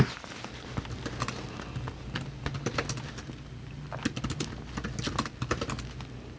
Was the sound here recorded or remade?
recorded